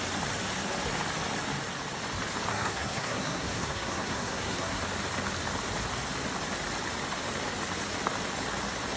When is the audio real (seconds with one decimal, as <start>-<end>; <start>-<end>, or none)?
0.0-2.5; 4.8-9.0